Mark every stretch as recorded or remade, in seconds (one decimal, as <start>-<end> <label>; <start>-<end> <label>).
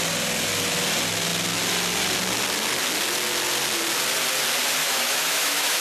0.0-4.8 recorded; 4.8-5.8 remade